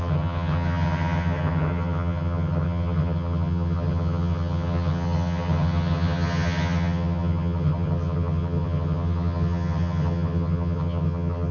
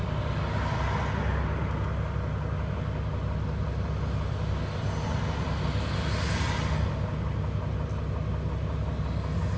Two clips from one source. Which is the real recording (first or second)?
second